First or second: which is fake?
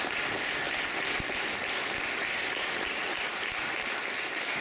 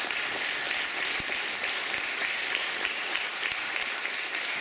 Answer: second